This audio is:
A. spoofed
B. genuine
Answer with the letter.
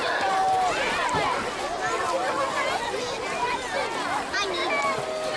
B